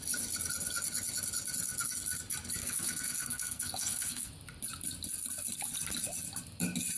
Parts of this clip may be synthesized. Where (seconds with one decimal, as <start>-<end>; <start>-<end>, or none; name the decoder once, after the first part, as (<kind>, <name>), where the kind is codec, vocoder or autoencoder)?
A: 2.6-4.3 (codec, SNAC)